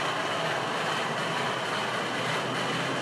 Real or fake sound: real